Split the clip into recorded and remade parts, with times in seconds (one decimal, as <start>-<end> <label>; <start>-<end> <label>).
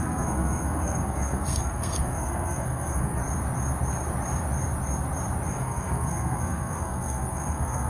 0.0-3.2 remade; 3.2-5.5 recorded; 5.5-7.9 remade